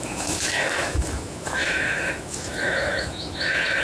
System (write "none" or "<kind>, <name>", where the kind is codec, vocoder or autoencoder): autoencoder, DAC-VAE